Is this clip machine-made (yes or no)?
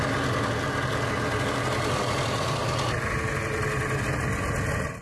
no